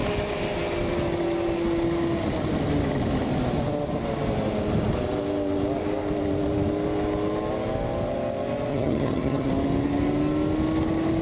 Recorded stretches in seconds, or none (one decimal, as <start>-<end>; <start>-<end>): 0.0-8.7; 9.5-11.2